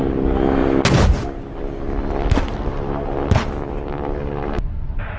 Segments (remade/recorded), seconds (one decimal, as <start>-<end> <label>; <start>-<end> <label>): 0.0-5.2 recorded